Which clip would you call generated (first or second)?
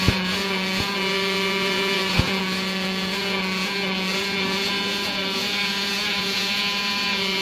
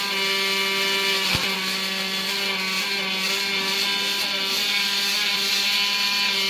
first